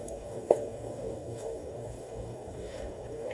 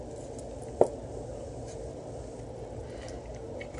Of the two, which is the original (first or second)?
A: second